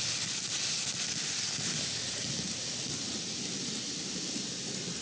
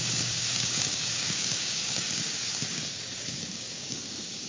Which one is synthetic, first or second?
second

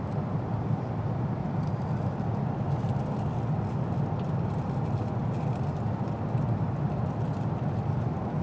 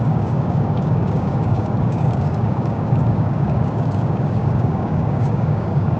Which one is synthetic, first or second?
second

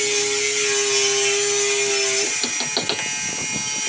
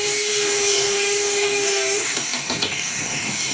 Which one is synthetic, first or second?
second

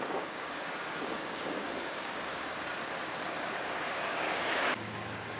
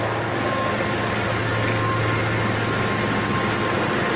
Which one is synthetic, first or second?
first